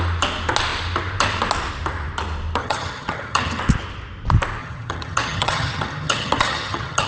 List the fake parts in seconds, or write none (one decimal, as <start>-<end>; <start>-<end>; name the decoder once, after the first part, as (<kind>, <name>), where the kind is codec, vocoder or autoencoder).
2.6-3.6 (vocoder, HiFi-GAN); 4.6-7.1